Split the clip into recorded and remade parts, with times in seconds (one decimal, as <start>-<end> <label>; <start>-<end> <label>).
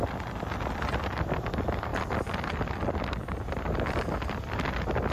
0.0-5.1 recorded